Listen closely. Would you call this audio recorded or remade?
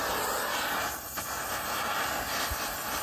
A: recorded